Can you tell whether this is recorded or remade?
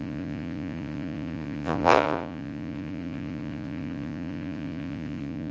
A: remade